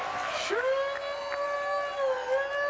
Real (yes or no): yes